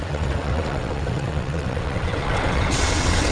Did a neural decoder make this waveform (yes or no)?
yes